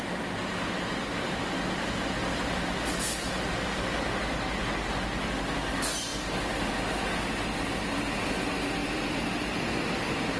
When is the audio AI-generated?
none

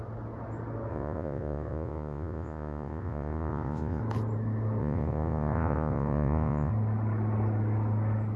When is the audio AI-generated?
0.9-4.0 (vocoder, Vocos); 4.8-6.7